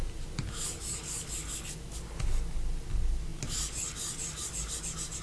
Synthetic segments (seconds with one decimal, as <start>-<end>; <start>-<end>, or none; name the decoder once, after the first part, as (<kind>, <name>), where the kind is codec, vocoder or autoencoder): none